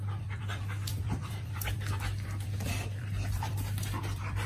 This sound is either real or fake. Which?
fake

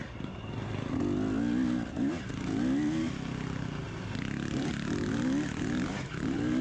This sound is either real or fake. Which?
real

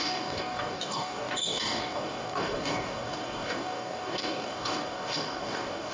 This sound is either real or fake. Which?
fake